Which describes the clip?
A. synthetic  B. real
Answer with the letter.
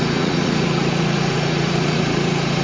A